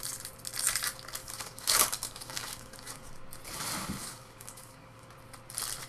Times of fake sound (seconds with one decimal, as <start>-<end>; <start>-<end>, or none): 1.2-3.1; 4.0-5.1